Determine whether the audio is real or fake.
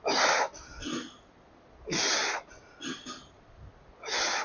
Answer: real